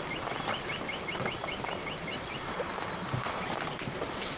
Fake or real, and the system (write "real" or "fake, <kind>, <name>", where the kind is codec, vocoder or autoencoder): real